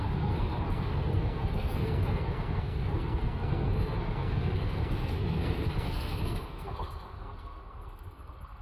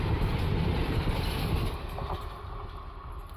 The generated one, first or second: first